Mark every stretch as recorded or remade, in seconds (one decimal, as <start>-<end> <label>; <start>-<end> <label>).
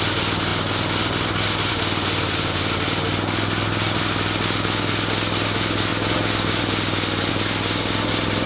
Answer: 0.0-8.5 recorded